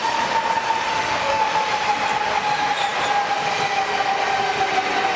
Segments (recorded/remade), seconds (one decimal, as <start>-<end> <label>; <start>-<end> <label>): 0.0-0.9 recorded; 0.9-1.4 remade; 1.4-5.2 recorded